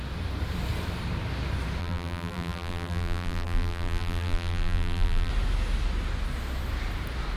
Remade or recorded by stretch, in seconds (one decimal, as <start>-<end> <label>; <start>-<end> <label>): 0.0-1.8 recorded; 1.8-5.3 remade; 5.3-7.4 recorded